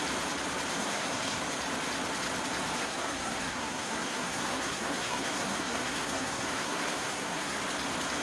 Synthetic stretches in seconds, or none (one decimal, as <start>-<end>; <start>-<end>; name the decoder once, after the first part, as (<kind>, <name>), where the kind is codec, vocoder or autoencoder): 0.7-1.4 (codec, SNAC); 2.8-7.6